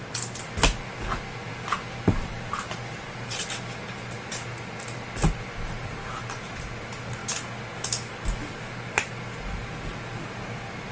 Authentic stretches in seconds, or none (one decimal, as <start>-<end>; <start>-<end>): 0.0-1.5; 3.5-10.9